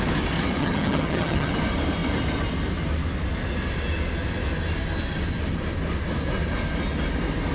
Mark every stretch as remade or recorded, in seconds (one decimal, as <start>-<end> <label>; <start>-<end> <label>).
0.0-0.6 recorded; 0.6-1.5 remade; 1.5-7.5 recorded